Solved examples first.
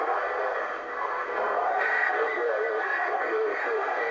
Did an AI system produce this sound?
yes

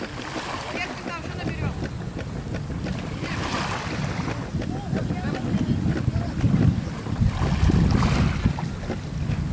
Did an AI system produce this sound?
no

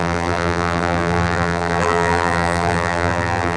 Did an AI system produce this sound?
yes